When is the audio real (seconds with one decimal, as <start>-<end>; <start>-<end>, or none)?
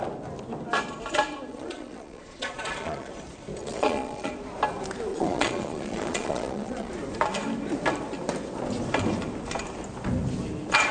0.0-1.5; 3.1-3.6; 4.3-5.1; 6.9-10.9